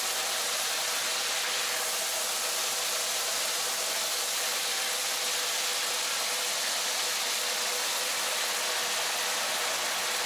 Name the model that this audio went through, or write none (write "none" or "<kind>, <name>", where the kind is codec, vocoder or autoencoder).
none